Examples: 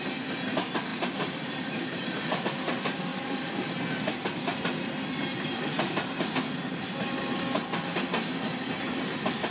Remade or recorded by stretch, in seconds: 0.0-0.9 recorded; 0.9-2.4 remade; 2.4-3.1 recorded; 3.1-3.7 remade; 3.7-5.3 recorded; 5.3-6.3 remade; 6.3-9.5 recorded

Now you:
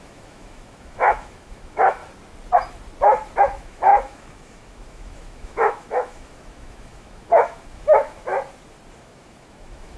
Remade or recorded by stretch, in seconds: 0.0-2.0 remade; 2.0-3.4 recorded; 3.4-8.3 remade; 8.3-9.0 recorded; 9.0-10.0 remade

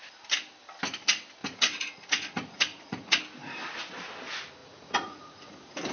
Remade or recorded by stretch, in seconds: 0.0-1.4 recorded; 1.4-3.2 remade; 3.2-4.6 recorded; 4.6-5.5 remade; 5.5-5.9 recorded

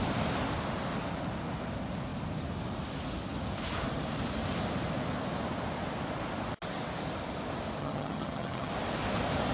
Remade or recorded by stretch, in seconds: 0.0-7.8 recorded; 7.8-8.7 remade; 8.7-9.5 recorded

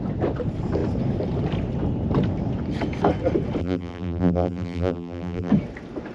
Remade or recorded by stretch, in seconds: 0.0-3.6 recorded; 3.6-5.5 remade; 5.5-6.1 recorded

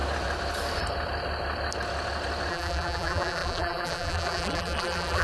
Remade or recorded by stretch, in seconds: 0.0-2.5 recorded; 2.5-5.2 remade